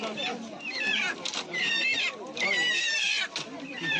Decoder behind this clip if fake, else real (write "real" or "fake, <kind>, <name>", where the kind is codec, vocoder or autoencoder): real